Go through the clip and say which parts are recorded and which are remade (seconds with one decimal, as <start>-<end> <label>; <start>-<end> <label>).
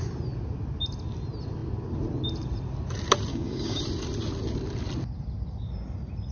0.0-3.3 recorded; 3.3-3.8 remade; 3.8-6.3 recorded